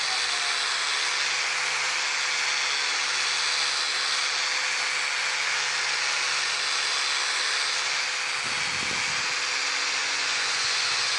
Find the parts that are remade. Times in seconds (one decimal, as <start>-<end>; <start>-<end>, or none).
10.0-11.2